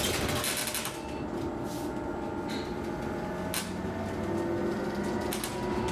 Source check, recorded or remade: recorded